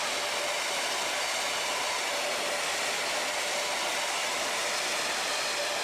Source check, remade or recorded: recorded